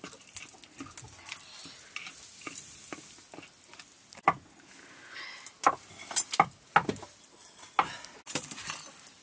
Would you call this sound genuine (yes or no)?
yes